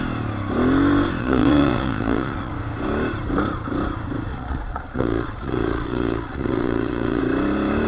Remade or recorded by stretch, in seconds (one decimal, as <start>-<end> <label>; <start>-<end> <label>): 0.0-1.2 recorded; 1.2-2.5 remade; 2.5-4.3 recorded; 4.3-7.2 remade; 7.2-7.9 recorded